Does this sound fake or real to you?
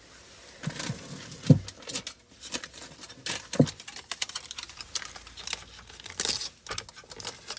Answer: real